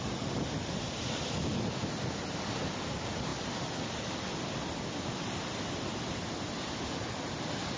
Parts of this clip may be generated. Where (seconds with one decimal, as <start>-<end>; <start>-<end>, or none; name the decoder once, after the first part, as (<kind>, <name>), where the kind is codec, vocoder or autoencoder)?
none